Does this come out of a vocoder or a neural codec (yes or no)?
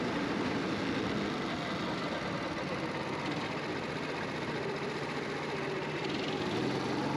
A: no